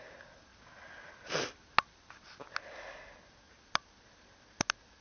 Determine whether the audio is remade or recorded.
recorded